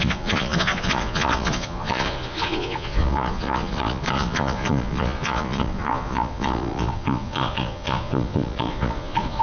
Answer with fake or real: fake